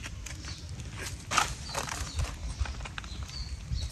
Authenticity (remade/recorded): recorded